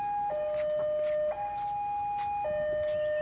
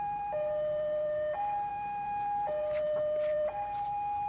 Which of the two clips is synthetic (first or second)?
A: second